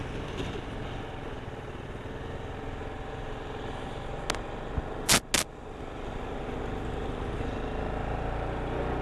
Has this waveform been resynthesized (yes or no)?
no